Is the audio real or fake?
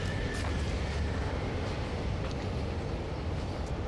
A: real